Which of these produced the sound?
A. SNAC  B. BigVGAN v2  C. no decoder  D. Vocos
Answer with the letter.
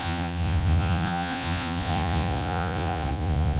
D